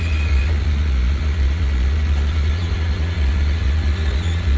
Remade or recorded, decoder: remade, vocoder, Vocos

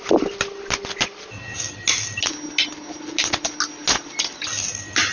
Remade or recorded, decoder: recorded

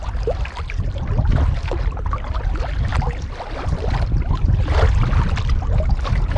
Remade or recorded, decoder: recorded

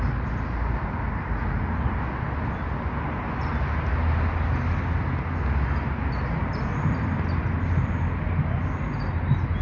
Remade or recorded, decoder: recorded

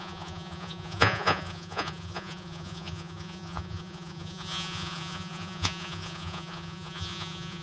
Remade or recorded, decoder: remade, vocoder, Vocos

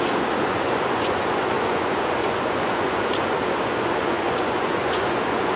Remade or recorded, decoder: remade, vocoder, Vocos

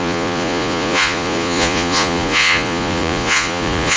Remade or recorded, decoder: remade, vocoder, Vocos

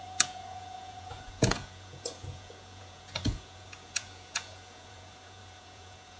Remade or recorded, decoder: remade, vocoder, Vocos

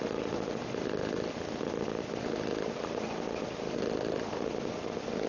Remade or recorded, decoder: recorded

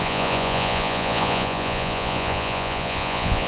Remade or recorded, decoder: remade, vocoder, Vocos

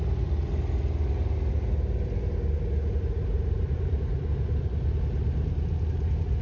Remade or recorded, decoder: recorded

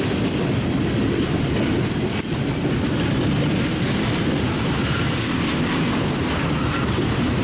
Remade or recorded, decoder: recorded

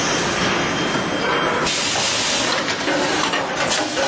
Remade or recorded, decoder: recorded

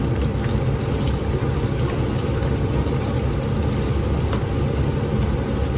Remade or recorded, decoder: recorded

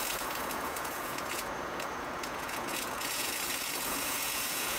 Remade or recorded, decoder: remade, vocoder, Vocos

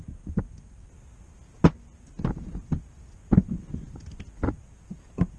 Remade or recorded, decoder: recorded